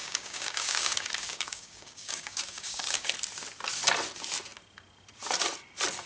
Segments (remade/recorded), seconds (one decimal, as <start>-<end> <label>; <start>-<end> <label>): 0.0-3.1 remade; 3.1-6.1 recorded